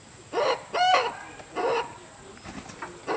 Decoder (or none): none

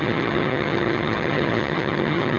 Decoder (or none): vocoder, HiFi-GAN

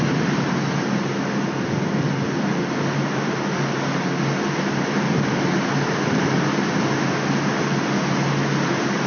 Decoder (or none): none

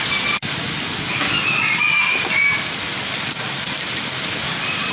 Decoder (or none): none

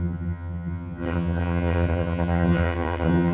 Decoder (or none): vocoder, HiFi-GAN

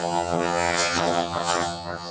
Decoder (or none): vocoder, HiFi-GAN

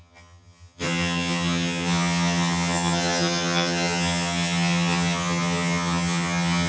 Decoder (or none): vocoder, HiFi-GAN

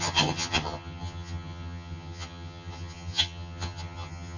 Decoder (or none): vocoder, HiFi-GAN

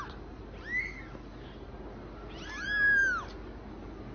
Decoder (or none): none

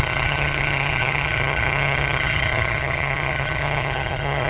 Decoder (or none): vocoder, HiFi-GAN